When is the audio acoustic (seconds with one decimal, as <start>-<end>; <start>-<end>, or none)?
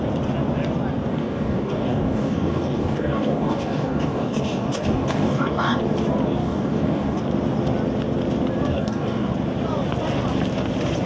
0.0-1.1; 5.8-6.4; 7.2-8.7; 9.3-11.1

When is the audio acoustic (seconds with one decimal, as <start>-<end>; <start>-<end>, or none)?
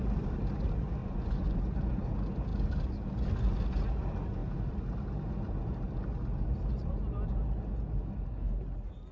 0.0-1.0; 1.6-9.1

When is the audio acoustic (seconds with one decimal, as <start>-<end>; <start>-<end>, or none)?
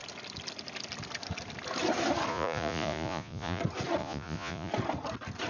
0.0-2.3; 3.6-4.0; 4.7-5.5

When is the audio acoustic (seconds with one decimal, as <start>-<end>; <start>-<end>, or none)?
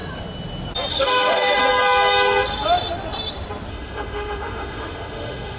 0.0-0.9; 1.6-3.7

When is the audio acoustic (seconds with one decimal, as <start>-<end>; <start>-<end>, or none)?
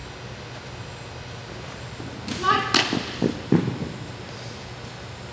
0.0-5.3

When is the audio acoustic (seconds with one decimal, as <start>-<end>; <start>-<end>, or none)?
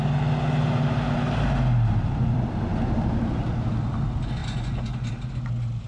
0.0-4.4; 5.1-5.9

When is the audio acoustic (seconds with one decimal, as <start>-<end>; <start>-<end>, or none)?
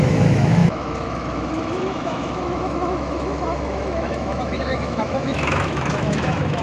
none